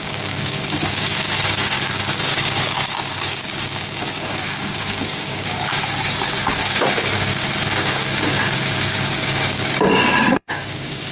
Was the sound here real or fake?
fake